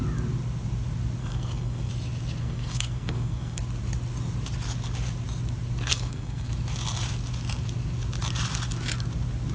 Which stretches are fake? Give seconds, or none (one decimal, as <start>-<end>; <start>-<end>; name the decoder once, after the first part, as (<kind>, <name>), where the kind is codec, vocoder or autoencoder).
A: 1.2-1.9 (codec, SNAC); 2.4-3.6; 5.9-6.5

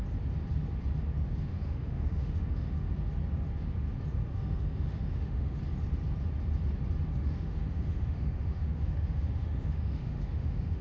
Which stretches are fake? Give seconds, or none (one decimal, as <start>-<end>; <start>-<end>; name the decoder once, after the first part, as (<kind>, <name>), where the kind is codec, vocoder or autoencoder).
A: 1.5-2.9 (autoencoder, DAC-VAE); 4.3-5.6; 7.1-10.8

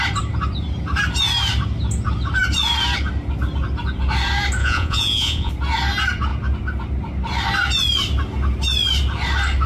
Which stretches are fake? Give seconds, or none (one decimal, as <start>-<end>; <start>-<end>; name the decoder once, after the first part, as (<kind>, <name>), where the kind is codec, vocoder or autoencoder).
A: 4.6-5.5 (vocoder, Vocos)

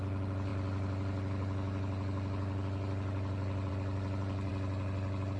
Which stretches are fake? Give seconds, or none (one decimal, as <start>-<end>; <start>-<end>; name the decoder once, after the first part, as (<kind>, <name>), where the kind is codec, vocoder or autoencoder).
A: none

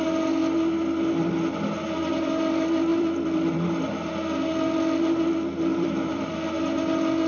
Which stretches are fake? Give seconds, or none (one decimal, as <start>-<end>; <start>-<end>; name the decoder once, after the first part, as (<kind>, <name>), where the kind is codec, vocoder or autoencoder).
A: 2.9-4.1 (vocoder, BigVGAN v2); 5.7-6.3